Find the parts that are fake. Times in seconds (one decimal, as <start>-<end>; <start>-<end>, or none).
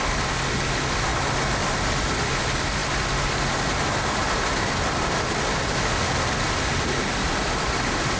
none